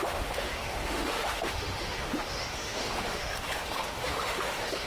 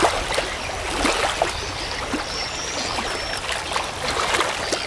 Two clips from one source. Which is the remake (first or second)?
first